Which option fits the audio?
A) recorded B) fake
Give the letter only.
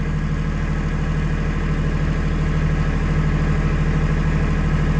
A